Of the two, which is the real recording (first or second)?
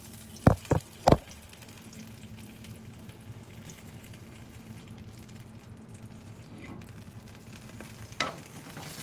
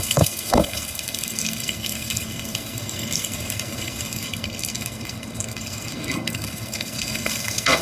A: first